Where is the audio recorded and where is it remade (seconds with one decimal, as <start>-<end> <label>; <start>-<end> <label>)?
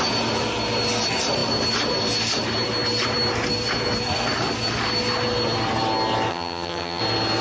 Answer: 0.0-6.3 recorded; 6.3-7.0 remade; 7.0-7.4 recorded